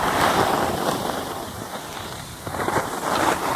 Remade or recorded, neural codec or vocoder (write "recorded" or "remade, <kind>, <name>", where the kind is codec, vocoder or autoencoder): recorded